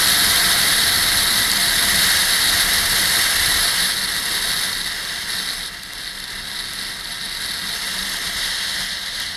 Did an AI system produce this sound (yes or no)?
no